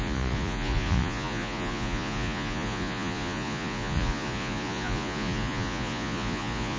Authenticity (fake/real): fake